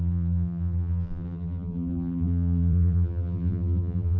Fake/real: fake